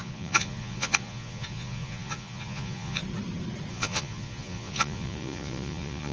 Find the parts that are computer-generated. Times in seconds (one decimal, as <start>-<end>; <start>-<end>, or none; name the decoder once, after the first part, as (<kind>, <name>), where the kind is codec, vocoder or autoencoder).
0.0-3.0 (vocoder, Vocos); 3.7-6.1